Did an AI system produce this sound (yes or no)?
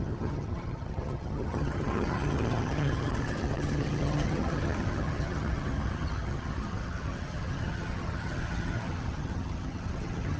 yes